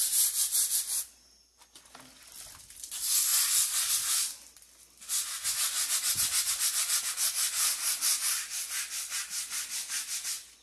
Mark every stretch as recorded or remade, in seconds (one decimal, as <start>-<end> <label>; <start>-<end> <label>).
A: 0.0-10.6 recorded